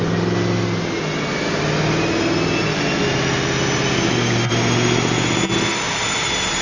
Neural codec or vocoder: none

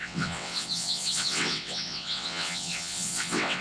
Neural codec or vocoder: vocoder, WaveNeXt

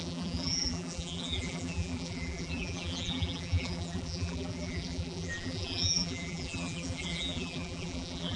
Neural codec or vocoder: vocoder, BigVGAN v2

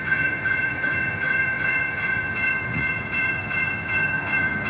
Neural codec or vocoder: vocoder, Vocos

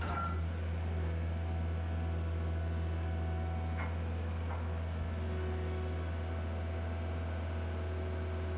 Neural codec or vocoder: none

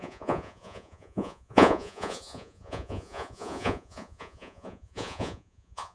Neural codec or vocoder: vocoder, Vocos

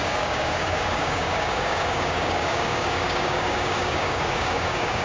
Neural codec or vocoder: codec, DAC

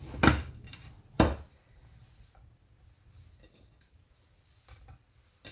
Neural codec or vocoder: none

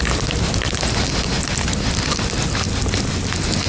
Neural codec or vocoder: none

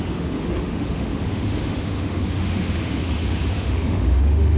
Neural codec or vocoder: autoencoder, DAC-VAE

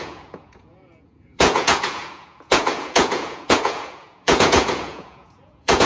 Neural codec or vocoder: vocoder, Vocos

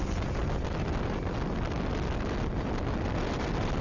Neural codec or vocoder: none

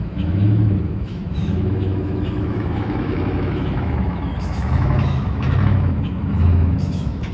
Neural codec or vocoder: autoencoder, DAC-VAE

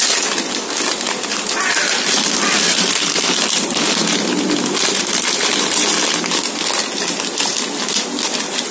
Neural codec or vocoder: none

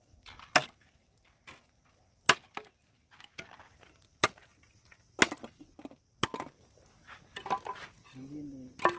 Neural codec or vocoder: none